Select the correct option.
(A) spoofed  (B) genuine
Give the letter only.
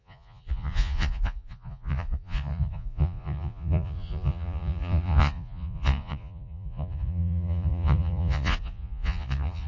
A